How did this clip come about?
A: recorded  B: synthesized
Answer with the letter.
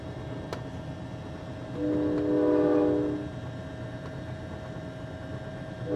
A